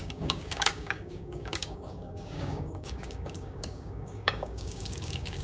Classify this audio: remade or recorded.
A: remade